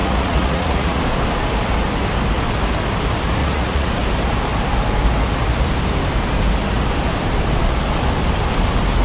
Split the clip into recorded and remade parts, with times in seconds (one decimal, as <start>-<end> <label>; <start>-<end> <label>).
0.0-1.0 remade; 1.0-3.4 recorded; 3.4-3.9 remade; 3.9-9.0 recorded